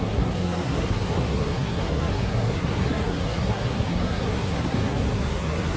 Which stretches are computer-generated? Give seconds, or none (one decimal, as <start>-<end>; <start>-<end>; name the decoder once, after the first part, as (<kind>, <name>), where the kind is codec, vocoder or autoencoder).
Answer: 0.0-5.8 (codec, SNAC)